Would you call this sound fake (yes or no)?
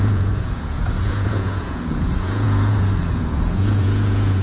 yes